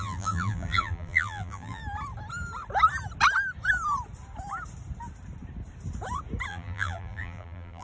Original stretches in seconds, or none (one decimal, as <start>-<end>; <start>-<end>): 1.8-6.5